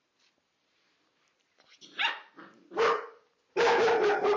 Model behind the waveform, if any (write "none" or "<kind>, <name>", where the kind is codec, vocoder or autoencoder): none